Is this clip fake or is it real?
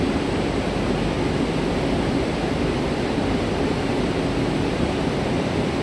fake